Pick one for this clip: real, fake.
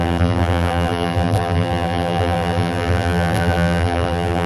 fake